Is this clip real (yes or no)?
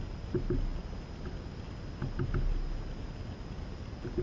yes